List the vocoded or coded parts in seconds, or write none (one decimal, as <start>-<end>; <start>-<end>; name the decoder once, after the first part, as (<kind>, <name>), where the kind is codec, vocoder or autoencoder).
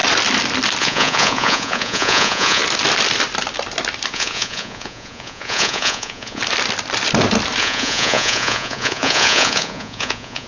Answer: 0.8-2.6 (vocoder, Vocos); 4.1-6.4; 7.6-10.5